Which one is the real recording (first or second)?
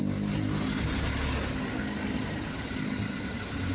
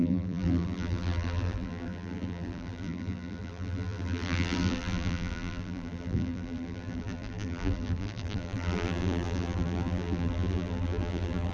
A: first